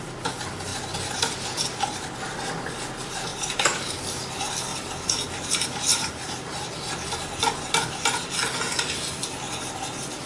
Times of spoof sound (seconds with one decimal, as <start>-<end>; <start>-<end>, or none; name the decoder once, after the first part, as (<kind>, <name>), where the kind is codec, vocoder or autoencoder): 3.3-3.9 (vocoder, BigVGAN v2); 4.7-5.3; 5.9-7.4